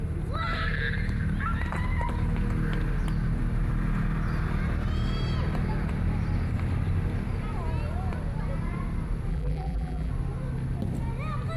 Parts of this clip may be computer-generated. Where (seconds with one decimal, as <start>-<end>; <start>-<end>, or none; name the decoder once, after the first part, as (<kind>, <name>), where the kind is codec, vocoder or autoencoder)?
9.3-10.1 (vocoder, BigVGAN v2)